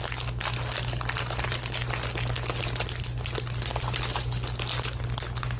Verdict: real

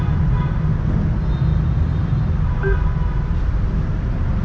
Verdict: real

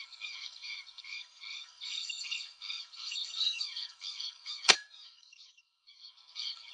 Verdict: fake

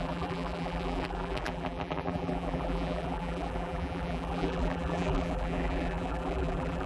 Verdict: fake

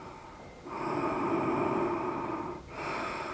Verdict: fake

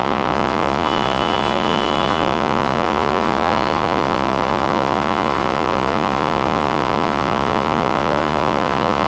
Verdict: fake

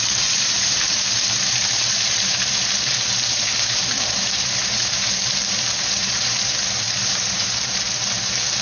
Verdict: fake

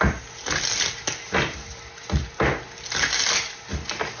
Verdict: real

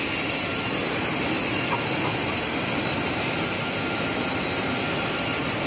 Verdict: real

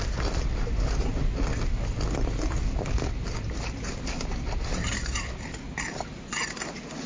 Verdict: real